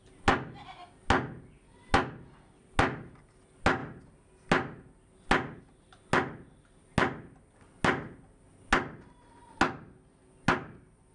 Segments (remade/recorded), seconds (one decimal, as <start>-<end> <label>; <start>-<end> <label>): 0.0-11.1 recorded